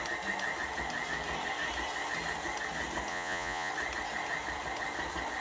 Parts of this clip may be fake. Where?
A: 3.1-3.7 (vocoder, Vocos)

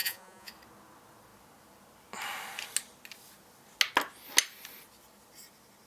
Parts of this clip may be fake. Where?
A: 0.0-0.5 (vocoder, Vocos)